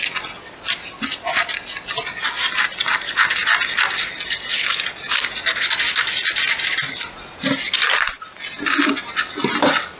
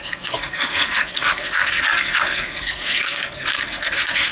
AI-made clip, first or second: second